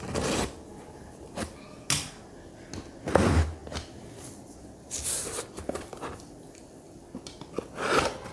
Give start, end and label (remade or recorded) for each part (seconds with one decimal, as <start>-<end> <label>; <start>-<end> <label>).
0.0-3.6 recorded; 3.6-7.0 remade; 7.0-8.3 recorded